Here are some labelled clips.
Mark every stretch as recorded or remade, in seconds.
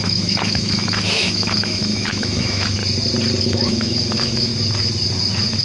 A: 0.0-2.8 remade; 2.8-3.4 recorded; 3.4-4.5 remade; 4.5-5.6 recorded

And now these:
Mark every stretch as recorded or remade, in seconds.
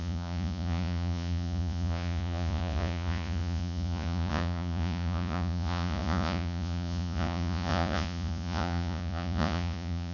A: 0.0-10.1 remade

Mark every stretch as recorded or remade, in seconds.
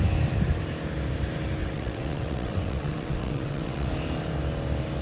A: 0.0-1.6 recorded; 1.6-3.9 remade; 3.9-5.0 recorded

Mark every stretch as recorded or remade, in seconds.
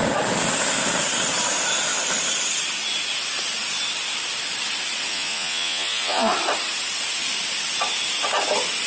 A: 0.0-5.1 recorded; 5.1-6.3 remade; 6.3-8.9 recorded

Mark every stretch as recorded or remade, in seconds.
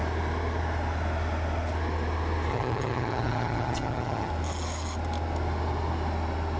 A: 0.0-2.5 recorded; 2.5-4.3 remade; 4.3-6.6 recorded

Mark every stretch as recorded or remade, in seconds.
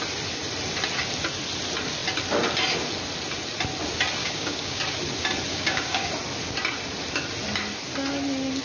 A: 0.0-4.2 recorded; 4.2-4.8 remade; 4.8-5.5 recorded; 5.5-6.1 remade; 6.1-8.6 recorded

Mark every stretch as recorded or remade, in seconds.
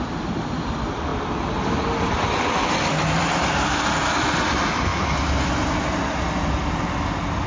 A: 0.0-7.5 recorded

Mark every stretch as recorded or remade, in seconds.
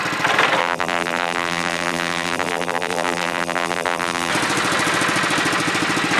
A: 0.0-0.6 recorded; 0.6-4.3 remade; 4.3-6.2 recorded